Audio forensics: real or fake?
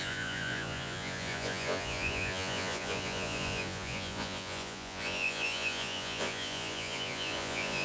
fake